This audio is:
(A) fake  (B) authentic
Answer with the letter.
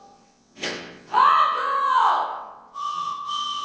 A